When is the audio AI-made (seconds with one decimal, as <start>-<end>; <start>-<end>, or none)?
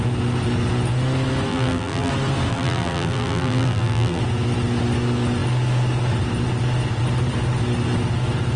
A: 1.5-2.1; 2.5-4.2